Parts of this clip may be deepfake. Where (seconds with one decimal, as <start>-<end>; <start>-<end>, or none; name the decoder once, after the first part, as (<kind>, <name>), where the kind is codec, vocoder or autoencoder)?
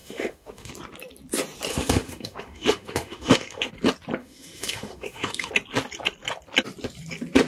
0.0-0.7 (autoencoder, DAC-VAE); 1.7-3.7; 4.2-5.5